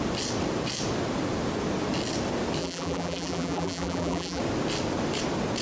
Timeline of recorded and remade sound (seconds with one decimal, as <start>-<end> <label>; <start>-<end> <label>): 0.0-2.6 recorded; 2.6-4.4 remade; 4.4-5.6 recorded